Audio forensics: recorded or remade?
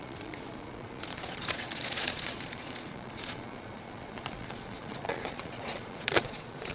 remade